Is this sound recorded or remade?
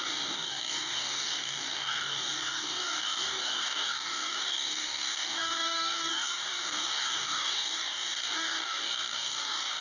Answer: remade